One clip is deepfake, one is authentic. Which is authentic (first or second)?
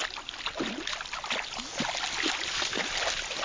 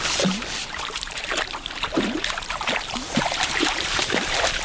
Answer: first